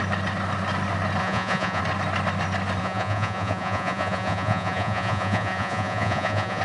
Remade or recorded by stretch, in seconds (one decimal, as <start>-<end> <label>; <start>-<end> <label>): 0.0-1.2 recorded; 1.2-1.8 remade; 1.8-2.8 recorded; 2.8-6.6 remade